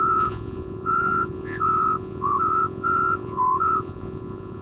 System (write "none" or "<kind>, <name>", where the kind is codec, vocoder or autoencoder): vocoder, Vocos